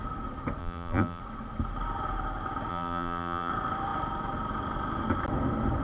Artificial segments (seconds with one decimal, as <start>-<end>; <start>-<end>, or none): 0.6-1.2; 2.7-3.5